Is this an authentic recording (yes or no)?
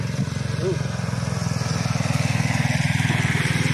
yes